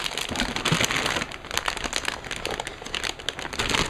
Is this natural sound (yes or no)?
yes